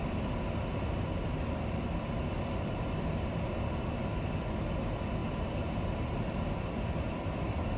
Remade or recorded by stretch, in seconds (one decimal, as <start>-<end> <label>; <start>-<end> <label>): 0.0-7.8 recorded